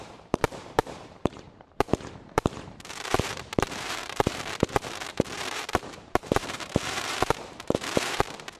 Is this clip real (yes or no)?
no